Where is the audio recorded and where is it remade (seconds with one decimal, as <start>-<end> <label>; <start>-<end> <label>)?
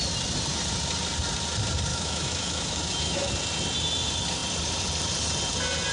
0.0-1.9 recorded; 1.9-3.3 remade; 3.3-5.9 recorded